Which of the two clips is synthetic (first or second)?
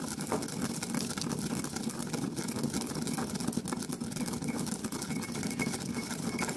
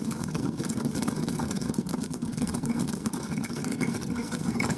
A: second